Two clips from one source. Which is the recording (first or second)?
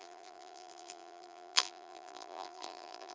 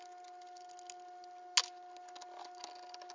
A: second